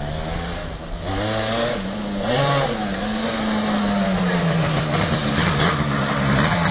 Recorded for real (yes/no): yes